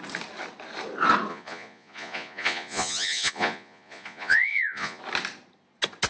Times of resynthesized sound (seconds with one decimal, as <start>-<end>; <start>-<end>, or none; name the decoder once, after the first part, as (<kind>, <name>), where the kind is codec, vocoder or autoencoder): 1.3-5.0 (vocoder, Vocos)